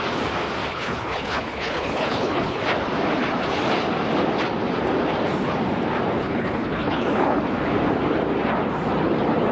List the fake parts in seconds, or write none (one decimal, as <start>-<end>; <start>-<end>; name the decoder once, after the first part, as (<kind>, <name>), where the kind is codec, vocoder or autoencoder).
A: 0.7-2.6 (codec, HILCodec); 6.2-7.4